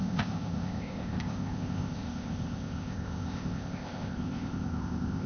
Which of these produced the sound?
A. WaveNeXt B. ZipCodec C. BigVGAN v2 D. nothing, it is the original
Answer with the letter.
B